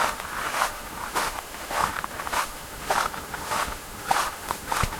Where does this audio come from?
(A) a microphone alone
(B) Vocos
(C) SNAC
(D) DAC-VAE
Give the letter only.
D